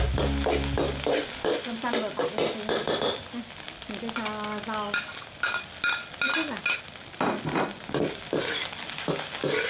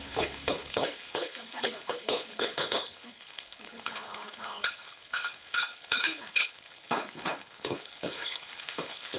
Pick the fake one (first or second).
second